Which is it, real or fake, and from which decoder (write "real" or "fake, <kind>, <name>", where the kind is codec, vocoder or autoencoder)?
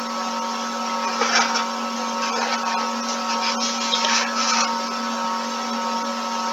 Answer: real